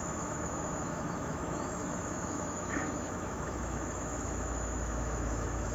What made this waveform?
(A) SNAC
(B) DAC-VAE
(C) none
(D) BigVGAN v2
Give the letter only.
B